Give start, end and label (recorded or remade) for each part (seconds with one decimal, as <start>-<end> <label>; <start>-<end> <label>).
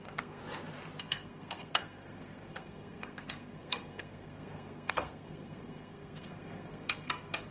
0.0-0.4 remade; 0.4-1.0 recorded; 1.0-7.5 remade